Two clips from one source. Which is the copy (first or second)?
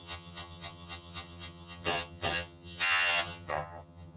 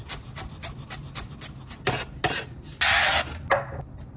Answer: first